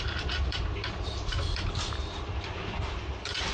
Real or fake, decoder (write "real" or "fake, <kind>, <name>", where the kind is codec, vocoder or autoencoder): fake, vocoder, BigVGAN v2